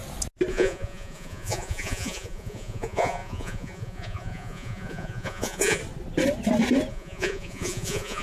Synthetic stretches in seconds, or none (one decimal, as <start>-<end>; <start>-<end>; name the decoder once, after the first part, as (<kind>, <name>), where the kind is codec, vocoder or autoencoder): 0.5-5.8 (vocoder, Vocos); 6.9-8.2